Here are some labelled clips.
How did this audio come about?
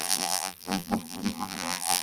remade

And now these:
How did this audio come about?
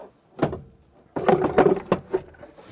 recorded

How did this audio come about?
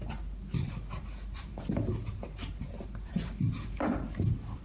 remade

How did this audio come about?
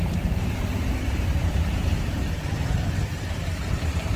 remade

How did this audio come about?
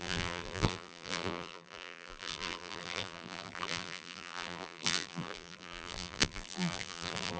remade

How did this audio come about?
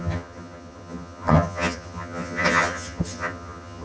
remade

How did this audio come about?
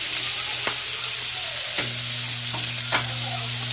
recorded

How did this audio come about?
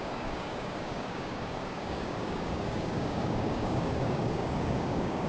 remade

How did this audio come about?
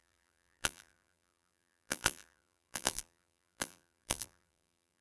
remade